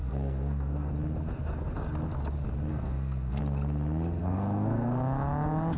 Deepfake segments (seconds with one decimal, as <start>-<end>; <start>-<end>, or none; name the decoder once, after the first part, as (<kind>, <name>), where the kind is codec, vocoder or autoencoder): 0.0-0.9 (codec, SNAC); 2.7-3.4; 4.2-5.0